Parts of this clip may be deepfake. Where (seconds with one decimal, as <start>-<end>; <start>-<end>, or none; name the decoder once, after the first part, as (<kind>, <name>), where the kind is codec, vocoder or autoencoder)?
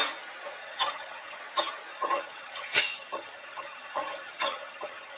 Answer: 0.6-1.4 (vocoder, HiFi-GAN); 1.9-5.2